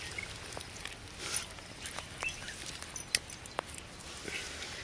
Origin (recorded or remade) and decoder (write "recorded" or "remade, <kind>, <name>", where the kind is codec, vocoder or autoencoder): recorded